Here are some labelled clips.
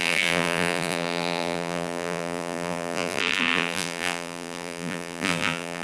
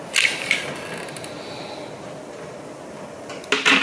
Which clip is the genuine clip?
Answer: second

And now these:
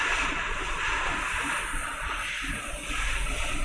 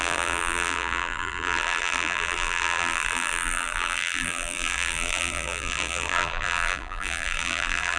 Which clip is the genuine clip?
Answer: first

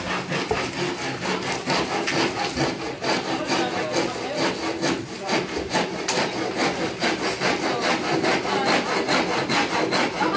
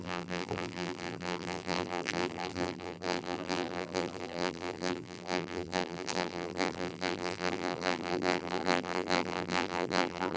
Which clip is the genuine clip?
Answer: first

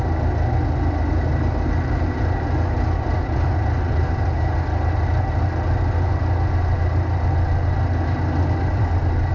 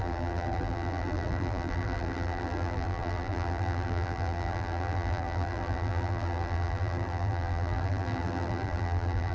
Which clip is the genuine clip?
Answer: first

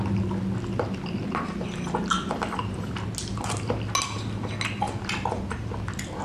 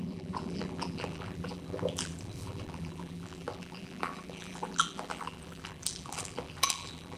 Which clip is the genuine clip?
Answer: first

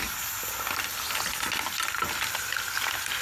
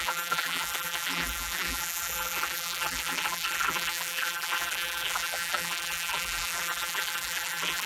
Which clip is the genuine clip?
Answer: first